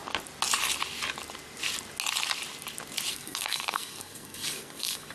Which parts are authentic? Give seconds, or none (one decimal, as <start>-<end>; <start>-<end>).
0.0-3.1